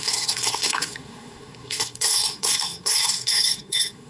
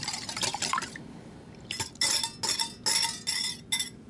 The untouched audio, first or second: second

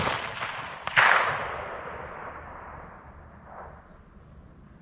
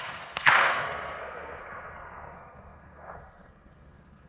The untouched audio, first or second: first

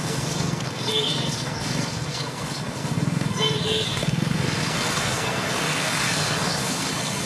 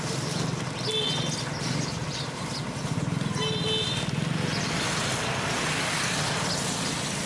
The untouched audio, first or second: second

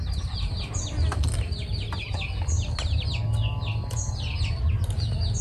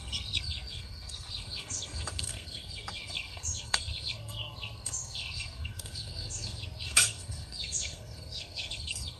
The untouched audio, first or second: first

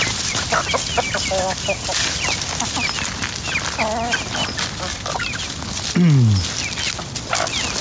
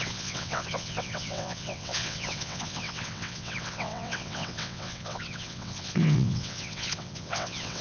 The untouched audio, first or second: first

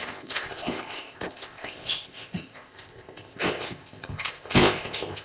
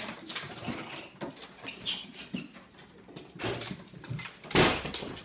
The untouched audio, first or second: second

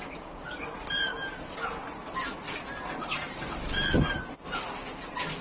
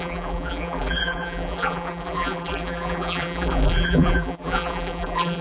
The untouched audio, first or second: first